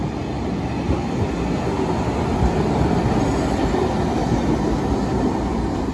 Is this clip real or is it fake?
real